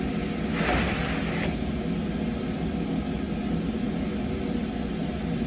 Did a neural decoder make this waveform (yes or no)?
no